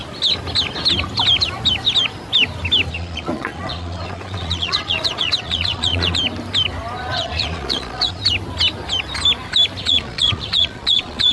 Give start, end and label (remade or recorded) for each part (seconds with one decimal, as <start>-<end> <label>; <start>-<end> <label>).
0.0-2.9 recorded; 2.9-6.2 remade; 6.2-7.0 recorded; 7.0-8.2 remade; 8.2-9.8 recorded; 9.8-11.3 remade